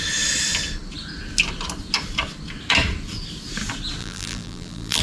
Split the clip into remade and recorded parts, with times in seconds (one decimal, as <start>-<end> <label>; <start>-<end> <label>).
0.0-4.0 recorded; 4.0-5.0 remade